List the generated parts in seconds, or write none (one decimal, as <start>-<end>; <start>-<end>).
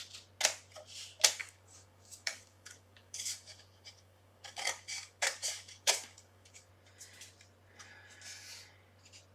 1.4-6.7